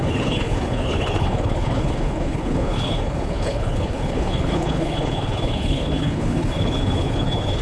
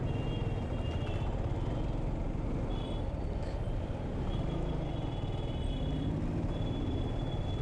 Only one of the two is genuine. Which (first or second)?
second